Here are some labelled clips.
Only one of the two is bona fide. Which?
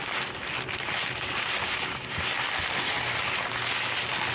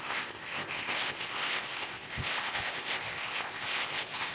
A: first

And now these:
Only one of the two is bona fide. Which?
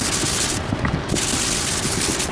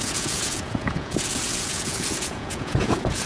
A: first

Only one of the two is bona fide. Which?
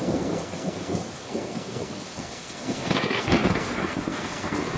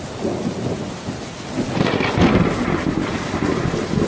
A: second